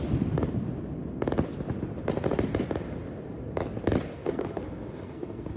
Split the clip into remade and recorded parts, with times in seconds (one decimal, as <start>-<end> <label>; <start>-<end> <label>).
0.0-4.1 recorded; 4.1-5.6 remade